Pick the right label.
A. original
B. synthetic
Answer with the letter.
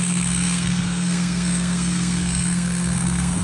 B